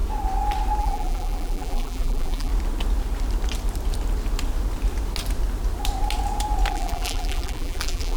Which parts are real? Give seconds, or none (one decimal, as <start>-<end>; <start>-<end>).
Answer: 0.0-0.8; 2.5-6.7